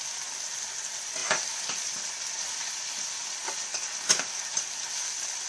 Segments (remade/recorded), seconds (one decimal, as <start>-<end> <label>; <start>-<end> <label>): 0.0-5.5 recorded